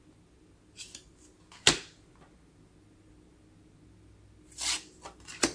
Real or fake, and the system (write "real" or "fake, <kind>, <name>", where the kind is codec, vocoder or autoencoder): real